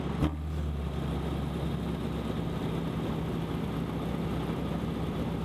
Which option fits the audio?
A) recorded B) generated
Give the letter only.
A